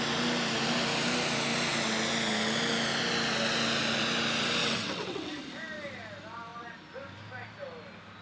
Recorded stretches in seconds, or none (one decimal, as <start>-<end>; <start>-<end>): 0.0-4.6; 5.3-8.2

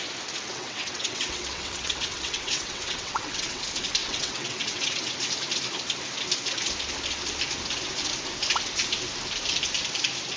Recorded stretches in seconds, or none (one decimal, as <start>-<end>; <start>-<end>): 0.0-0.5; 3.6-4.0; 5.1-10.4

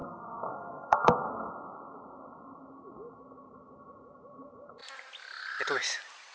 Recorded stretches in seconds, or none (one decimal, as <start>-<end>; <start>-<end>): 1.5-6.3

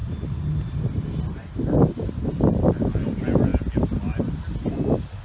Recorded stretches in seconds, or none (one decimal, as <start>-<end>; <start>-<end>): 0.0-5.2